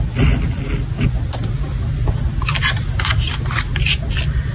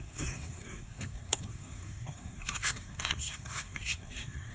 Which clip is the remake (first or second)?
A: second